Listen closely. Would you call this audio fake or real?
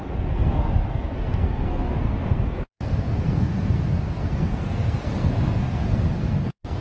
fake